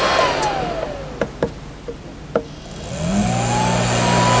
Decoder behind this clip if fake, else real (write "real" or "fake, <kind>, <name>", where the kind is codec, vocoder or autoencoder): real